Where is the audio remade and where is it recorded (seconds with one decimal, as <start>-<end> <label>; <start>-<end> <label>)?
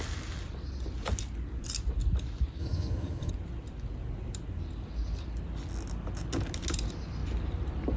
0.0-2.6 recorded; 2.6-3.3 remade; 3.3-8.0 recorded